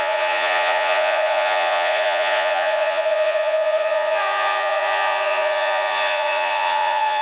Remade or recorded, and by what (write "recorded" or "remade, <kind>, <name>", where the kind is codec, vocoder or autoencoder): remade, vocoder, Vocos